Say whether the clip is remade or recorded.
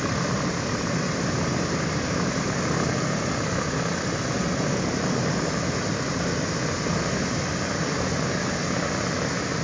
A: recorded